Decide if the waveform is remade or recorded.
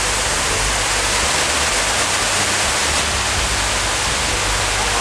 recorded